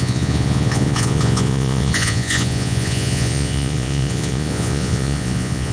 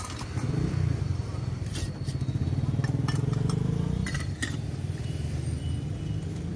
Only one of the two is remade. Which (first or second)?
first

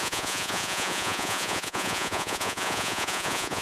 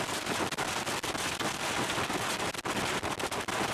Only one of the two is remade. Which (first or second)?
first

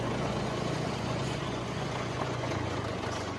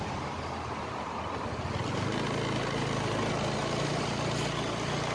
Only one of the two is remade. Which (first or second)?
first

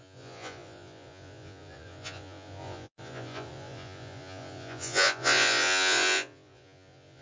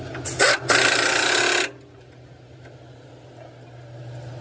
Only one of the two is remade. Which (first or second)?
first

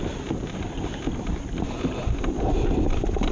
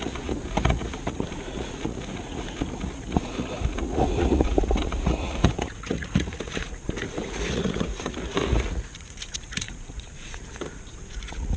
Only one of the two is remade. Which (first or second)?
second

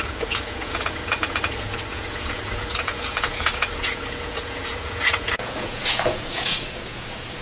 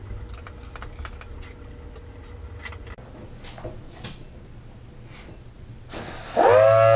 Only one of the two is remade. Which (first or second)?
first